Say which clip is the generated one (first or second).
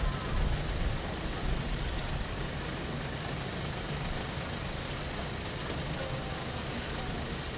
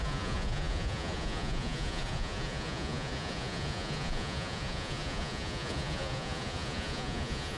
second